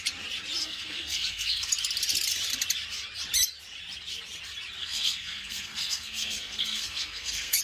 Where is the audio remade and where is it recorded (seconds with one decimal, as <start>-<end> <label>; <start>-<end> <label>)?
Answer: 0.0-0.6 recorded; 0.6-1.7 remade; 1.7-4.8 recorded; 4.8-7.6 remade